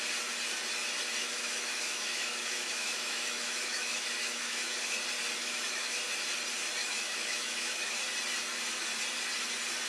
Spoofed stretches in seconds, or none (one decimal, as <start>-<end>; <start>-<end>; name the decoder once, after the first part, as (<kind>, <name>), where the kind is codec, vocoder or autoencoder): 1.2-4.8 (autoencoder, DAC-VAE); 5.4-6.0; 6.8-8.0